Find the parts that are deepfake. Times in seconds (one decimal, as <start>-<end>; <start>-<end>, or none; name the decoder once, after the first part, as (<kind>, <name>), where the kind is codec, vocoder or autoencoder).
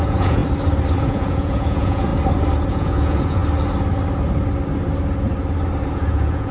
0.0-0.4 (vocoder, Vocos); 1.0-2.1; 2.7-3.4; 5.9-6.5